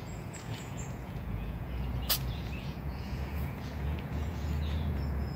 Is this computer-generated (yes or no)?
yes